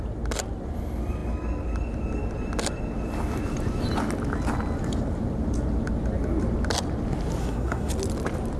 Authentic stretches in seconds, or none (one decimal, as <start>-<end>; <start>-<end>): 0.0-7.4; 7.9-8.6

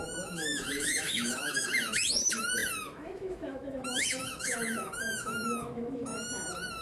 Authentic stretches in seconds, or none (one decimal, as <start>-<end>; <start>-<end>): 6.1-6.8

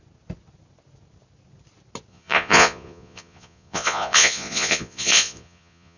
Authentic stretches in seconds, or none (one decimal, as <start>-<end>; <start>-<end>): 0.0-2.1

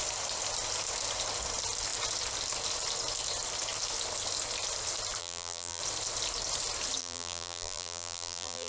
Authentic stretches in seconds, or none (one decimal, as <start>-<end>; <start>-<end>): 0.0-5.2; 5.8-7.0

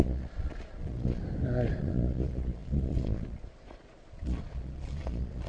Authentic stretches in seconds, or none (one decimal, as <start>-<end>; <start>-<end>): 1.2-1.8

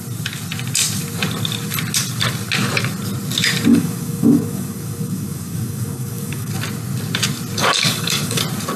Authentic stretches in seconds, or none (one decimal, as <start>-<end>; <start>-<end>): 0.0-3.7; 6.5-7.6; 8.4-8.8

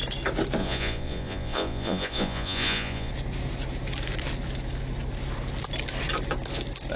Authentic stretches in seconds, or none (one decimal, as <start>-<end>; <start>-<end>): 0.0-0.6; 3.1-7.0

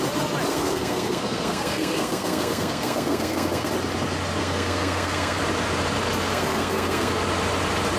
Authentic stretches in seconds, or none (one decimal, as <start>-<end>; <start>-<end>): 0.0-0.5; 3.7-4.4; 5.4-6.3; 7.1-8.0